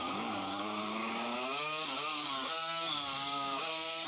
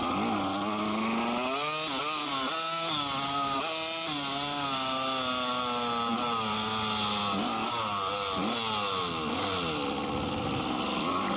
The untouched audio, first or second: second